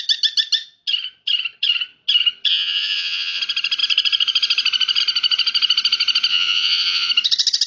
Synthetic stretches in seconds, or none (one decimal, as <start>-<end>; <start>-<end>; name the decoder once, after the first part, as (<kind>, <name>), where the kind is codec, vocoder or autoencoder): 2.5-3.4 (vocoder, Vocos); 6.3-7.1